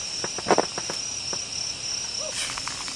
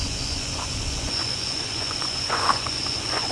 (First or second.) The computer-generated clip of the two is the second